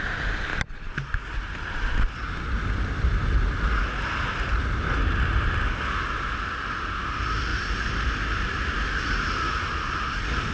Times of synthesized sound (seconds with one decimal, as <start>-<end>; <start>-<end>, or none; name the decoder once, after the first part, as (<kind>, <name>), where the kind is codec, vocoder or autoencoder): none